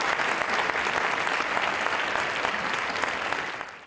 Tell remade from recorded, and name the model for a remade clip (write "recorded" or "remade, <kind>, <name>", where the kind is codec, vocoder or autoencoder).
recorded